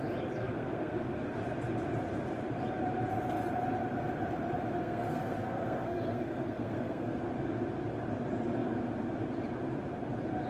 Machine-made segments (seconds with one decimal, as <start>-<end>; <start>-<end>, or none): 0.4-1.4; 4.8-7.2